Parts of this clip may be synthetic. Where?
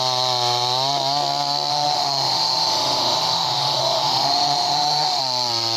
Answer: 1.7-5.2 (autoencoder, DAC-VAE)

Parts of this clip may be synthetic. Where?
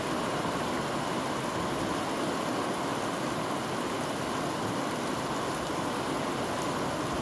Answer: 2.9-4.2 (vocoder, BigVGAN v2)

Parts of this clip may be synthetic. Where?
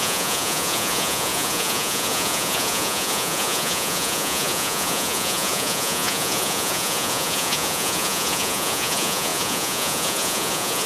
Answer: 0.0-10.9 (vocoder, Vocos)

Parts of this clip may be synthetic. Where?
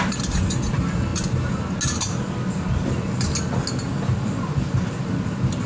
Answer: none